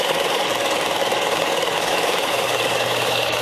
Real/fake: fake